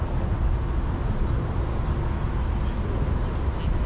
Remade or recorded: recorded